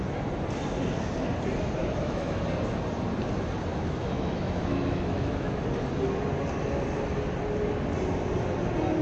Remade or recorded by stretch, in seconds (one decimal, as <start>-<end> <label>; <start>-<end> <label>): 0.0-1.8 recorded; 1.8-2.4 remade; 2.4-3.7 recorded; 3.7-5.6 remade; 5.6-9.0 recorded